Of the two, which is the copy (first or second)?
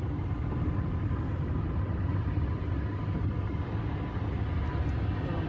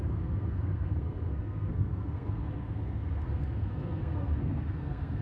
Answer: second